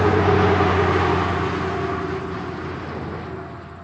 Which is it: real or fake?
real